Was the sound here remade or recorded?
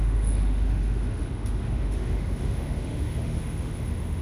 remade